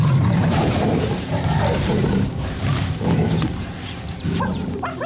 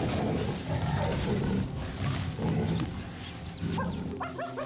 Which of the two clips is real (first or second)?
second